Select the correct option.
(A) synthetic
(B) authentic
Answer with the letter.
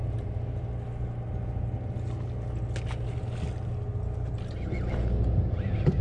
B